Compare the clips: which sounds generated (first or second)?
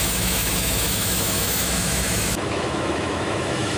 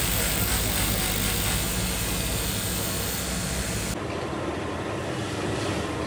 first